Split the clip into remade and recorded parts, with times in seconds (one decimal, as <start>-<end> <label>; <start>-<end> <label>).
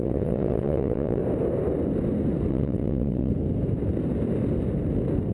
0.0-1.2 remade; 1.2-2.5 recorded; 2.5-3.3 remade; 3.3-5.3 recorded